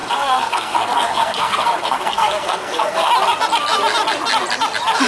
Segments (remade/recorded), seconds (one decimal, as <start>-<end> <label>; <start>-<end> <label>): 0.0-3.1 remade; 3.1-5.1 recorded